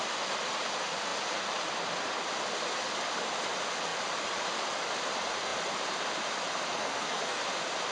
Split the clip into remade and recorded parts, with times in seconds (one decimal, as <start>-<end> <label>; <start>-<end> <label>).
0.0-6.7 recorded; 6.7-7.4 remade; 7.4-7.9 recorded